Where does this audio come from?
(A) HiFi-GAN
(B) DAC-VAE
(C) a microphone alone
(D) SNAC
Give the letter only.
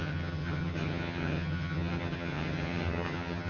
A